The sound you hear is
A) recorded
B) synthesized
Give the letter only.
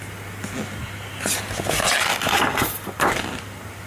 A